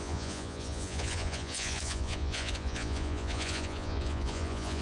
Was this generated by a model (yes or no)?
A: yes